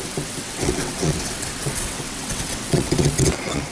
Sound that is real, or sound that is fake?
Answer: fake